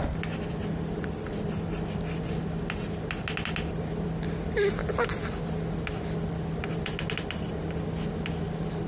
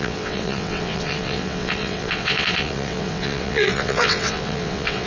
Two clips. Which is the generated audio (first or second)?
second